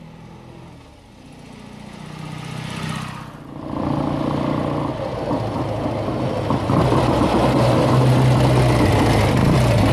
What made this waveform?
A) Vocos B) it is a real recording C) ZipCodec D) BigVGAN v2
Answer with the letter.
B